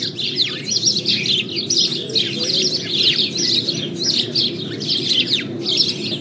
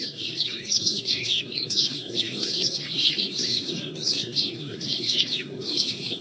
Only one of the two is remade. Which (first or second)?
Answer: second